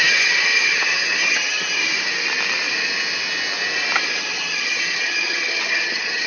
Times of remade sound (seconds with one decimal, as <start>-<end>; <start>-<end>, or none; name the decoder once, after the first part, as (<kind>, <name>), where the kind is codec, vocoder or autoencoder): 0.0-1.8 (vocoder, HiFi-GAN); 4.2-6.3